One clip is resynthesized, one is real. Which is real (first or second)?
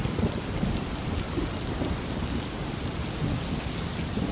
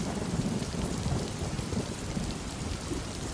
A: first